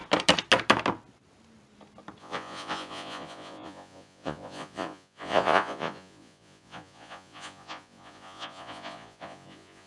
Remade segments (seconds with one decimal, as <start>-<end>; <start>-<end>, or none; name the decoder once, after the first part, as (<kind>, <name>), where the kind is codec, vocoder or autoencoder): 2.2-9.9 (vocoder, Vocos)